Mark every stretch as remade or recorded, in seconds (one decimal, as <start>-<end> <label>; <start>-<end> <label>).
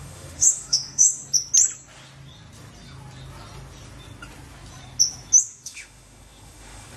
0.0-1.2 remade; 1.2-5.4 recorded; 5.4-7.0 remade